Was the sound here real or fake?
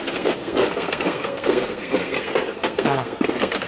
fake